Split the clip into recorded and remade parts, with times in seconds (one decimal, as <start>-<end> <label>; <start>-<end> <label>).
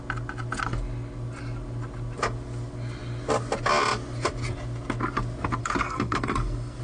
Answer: 0.0-5.6 recorded; 5.6-6.8 remade